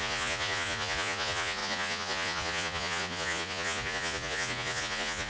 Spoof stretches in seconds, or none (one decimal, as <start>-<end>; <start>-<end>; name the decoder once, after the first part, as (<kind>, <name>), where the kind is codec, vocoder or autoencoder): 0.0-5.3 (vocoder, Vocos)